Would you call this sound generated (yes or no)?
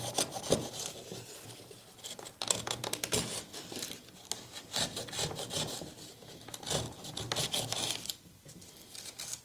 no